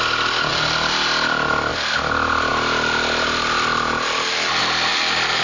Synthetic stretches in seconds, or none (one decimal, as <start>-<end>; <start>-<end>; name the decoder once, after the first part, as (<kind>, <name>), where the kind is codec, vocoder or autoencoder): none